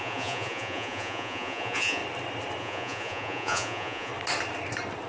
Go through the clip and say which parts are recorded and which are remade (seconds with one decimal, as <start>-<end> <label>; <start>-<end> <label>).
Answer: 0.0-2.0 remade; 2.0-2.6 recorded; 2.6-4.1 remade; 4.1-5.1 recorded